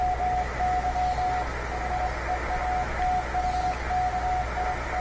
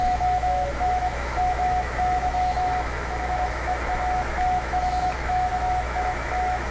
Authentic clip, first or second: first